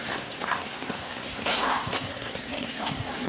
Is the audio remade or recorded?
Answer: remade